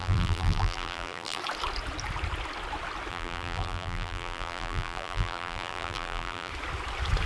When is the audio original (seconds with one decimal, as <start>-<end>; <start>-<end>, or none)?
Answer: 1.4-3.1; 6.5-7.3